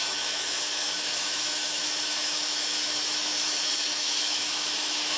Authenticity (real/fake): fake